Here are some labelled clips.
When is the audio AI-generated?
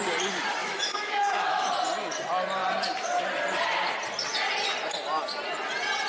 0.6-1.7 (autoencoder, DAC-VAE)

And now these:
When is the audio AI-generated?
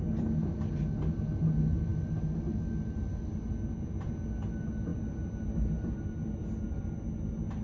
none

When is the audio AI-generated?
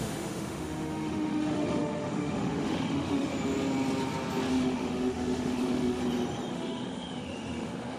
0.0-3.3 (autoencoder, DAC-VAE); 4.5-6.0; 6.5-8.0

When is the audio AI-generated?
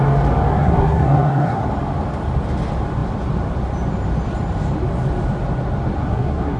0.5-1.7 (codec, SNAC); 6.0-6.6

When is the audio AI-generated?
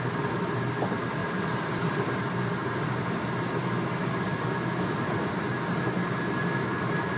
1.2-2.0 (vocoder, BigVGAN v2)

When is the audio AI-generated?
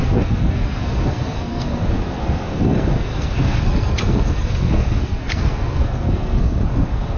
0.0-7.2 (codec, SNAC)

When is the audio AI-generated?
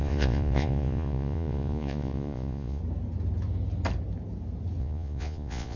0.0-2.8 (vocoder, Vocos); 4.8-5.8